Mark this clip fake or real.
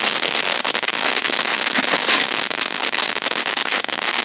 fake